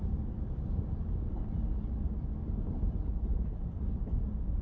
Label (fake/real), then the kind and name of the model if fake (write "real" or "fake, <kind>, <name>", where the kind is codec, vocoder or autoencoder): real